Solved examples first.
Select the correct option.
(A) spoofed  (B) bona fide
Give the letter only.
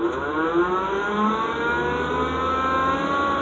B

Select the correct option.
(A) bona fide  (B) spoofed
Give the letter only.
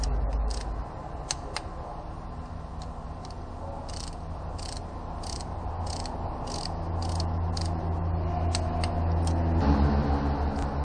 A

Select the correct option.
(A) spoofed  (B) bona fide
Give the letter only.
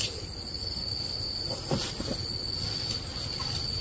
B